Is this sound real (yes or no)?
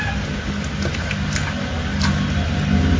yes